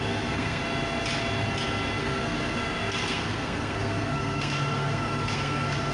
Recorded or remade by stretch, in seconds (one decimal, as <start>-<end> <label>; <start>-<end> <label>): 0.0-0.6 remade; 0.6-2.0 recorded; 2.0-5.9 remade